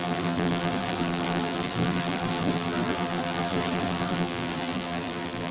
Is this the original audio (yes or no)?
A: no